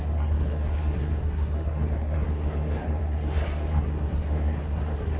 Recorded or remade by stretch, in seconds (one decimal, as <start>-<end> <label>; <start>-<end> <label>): 0.0-5.2 remade

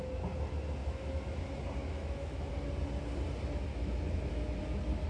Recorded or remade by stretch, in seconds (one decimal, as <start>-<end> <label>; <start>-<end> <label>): 0.0-0.8 recorded; 0.8-1.4 remade; 1.4-1.8 recorded; 1.8-2.5 remade; 2.5-3.7 recorded; 3.7-4.6 remade; 4.6-5.1 recorded

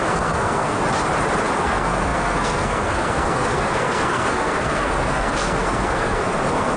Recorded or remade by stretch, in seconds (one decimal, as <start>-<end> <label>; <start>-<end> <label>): 0.0-0.8 remade; 0.8-1.6 recorded; 1.6-6.8 remade

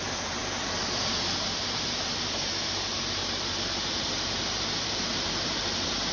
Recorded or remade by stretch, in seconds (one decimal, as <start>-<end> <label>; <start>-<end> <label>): 0.0-6.1 remade